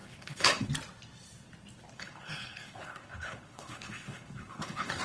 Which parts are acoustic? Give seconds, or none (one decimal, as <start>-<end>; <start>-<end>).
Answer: 0.7-1.9

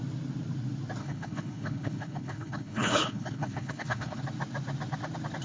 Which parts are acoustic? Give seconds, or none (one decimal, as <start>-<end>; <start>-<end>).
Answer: 0.0-1.0; 4.2-5.4